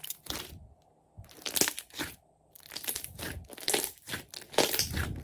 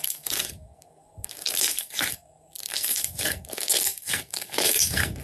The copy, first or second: second